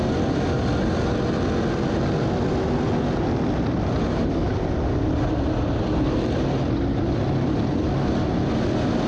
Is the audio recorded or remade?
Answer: recorded